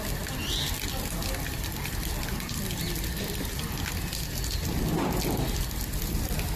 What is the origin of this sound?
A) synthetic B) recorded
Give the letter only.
B